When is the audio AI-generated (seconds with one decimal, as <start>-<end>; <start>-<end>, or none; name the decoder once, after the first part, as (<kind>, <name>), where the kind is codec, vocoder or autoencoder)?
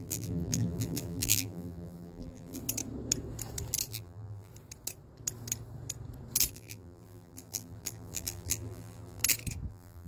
0.0-2.6 (vocoder, BigVGAN v2); 3.9-4.5; 6.5-9.2; 9.7-10.1